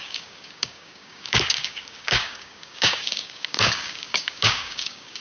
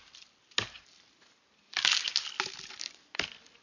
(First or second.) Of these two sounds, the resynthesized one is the first